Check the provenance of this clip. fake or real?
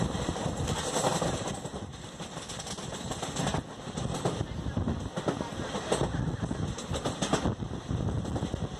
real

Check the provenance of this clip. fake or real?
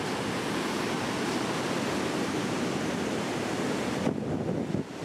real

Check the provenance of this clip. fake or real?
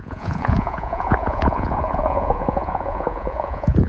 fake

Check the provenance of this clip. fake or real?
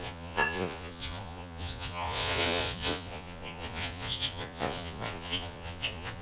fake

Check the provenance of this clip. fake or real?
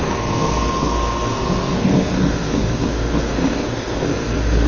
fake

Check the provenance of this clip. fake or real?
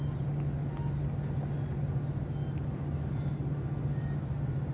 real